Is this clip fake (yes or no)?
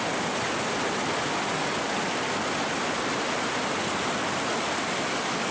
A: no